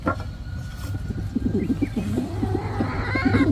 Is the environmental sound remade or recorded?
recorded